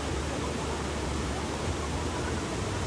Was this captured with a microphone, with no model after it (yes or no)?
yes